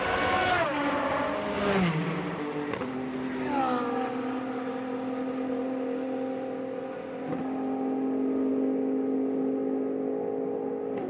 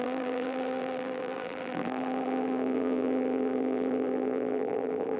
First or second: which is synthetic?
second